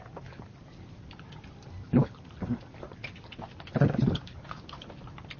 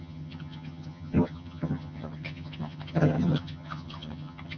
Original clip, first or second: first